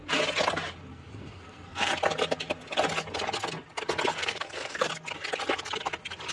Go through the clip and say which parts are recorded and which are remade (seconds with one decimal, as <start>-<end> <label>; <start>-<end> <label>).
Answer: 0.0-0.9 recorded; 0.9-1.9 remade; 1.9-4.1 recorded; 4.1-4.9 remade; 4.9-6.3 recorded